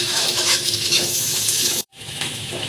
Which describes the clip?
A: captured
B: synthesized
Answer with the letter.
B